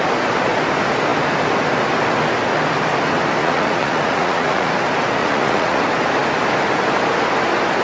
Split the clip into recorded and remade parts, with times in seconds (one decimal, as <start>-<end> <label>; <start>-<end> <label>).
0.0-3.4 recorded; 3.4-4.7 remade; 4.7-5.2 recorded; 5.2-5.8 remade; 5.8-7.8 recorded